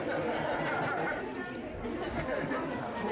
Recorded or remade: recorded